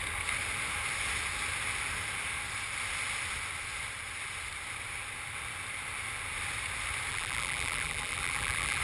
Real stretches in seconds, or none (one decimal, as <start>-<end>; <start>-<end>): 0.0-7.1